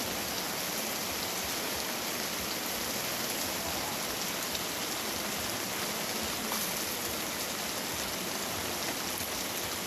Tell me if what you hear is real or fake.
real